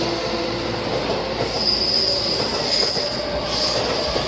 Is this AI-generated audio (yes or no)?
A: no